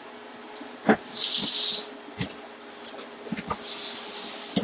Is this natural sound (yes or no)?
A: yes